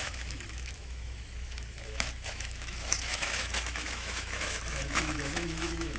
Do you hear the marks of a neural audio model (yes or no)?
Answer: yes